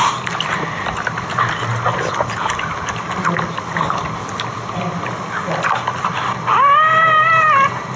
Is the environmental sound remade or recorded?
remade